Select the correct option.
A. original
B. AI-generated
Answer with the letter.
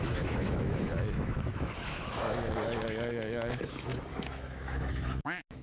B